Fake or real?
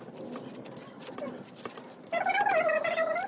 real